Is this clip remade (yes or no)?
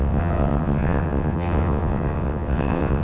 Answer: yes